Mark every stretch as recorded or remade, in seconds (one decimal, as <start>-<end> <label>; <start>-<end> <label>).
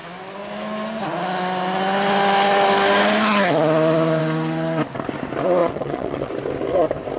0.0-5.6 recorded; 5.6-6.3 remade; 6.3-7.2 recorded